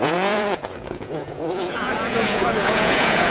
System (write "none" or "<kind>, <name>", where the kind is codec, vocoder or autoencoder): vocoder, Vocos